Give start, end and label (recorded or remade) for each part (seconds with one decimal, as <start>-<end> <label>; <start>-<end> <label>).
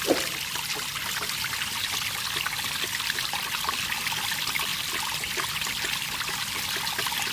0.0-7.3 recorded